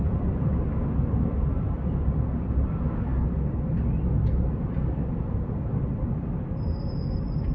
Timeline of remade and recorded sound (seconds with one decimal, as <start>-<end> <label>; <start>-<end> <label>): 0.0-7.5 recorded